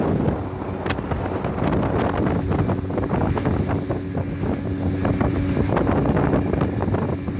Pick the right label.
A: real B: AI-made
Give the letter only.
A